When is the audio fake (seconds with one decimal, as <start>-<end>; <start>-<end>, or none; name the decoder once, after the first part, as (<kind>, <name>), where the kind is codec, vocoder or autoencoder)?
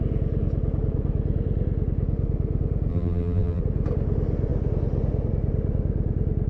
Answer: 2.9-3.6 (vocoder, BigVGAN v2)